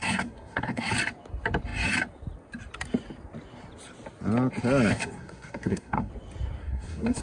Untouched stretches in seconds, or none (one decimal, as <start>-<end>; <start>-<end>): 0.9-4.9; 6.1-6.6